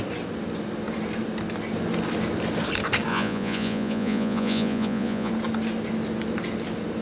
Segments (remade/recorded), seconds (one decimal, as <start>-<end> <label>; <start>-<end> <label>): 0.0-3.1 recorded; 3.1-5.3 remade; 5.3-7.0 recorded